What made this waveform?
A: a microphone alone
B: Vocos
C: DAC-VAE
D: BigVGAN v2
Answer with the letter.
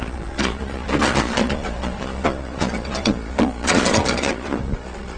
B